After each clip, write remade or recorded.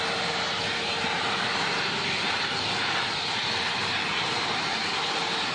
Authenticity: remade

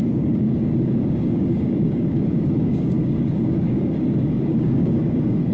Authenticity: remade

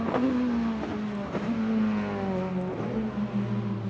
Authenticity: recorded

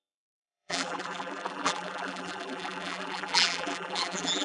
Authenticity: remade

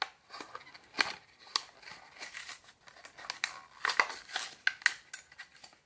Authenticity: recorded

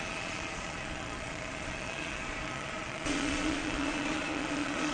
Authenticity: remade